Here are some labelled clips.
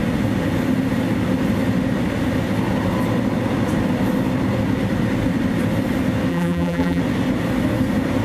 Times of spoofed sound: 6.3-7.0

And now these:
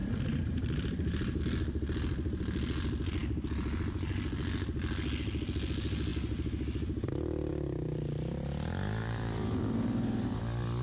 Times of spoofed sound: 0.0-1.4; 9.0-10.4

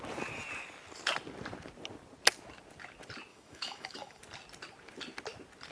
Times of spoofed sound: 3.3-4.2